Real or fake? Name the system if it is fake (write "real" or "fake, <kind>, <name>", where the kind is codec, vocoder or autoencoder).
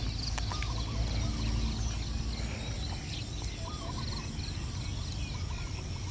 real